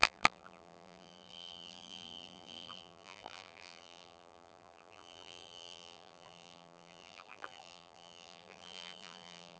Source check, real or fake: fake